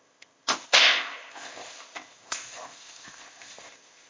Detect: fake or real fake